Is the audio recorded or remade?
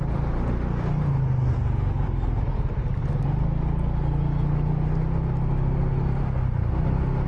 recorded